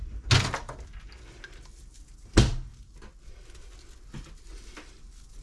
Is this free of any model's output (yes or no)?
yes